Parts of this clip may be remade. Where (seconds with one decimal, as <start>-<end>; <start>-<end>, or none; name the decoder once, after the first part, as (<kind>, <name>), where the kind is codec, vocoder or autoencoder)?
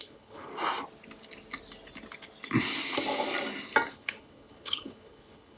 0.0-0.5 (codec, HILCodec); 3.9-5.6